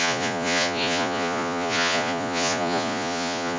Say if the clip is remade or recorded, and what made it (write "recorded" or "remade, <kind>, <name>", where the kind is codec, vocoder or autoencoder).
remade, vocoder, Vocos